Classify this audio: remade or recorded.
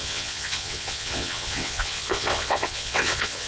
remade